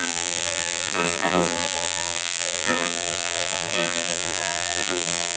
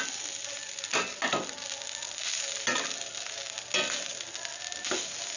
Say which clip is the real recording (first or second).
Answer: second